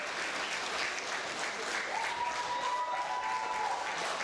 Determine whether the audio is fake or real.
real